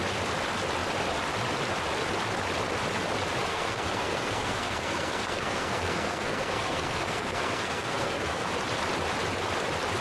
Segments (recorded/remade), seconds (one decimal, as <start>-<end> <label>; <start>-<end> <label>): 0.0-3.5 recorded; 3.5-8.5 remade; 8.5-10.0 recorded